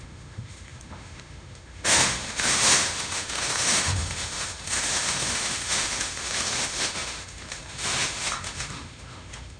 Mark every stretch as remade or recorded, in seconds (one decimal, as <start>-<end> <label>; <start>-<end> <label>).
0.0-9.6 remade

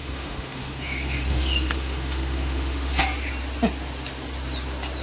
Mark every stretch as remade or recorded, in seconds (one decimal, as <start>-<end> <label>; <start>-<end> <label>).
0.0-3.0 remade; 3.0-5.0 recorded

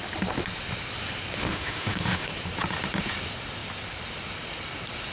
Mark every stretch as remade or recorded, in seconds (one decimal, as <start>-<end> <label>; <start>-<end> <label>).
0.0-1.4 recorded; 1.4-2.3 remade; 2.3-5.1 recorded

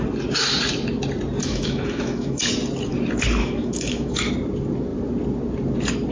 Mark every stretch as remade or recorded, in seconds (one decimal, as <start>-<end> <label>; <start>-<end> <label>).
0.0-1.4 recorded; 1.4-2.5 remade; 2.5-3.4 recorded; 3.4-4.3 remade; 4.3-6.1 recorded

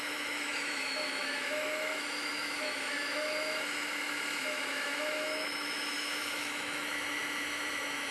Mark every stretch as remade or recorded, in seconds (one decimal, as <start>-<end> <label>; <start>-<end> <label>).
0.0-8.1 remade

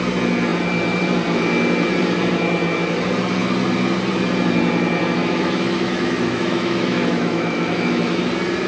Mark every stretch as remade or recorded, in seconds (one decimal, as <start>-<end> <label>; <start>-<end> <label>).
0.0-5.2 recorded; 5.2-8.2 remade; 8.2-8.7 recorded